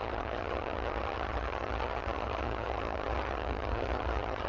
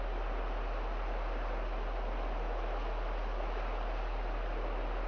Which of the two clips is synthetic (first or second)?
first